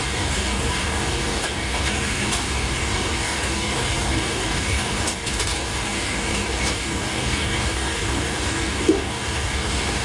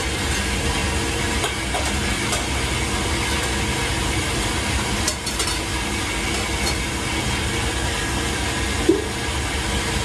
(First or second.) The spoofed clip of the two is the first